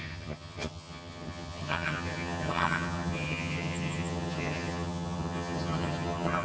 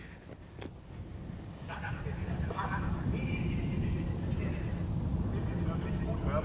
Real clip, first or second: second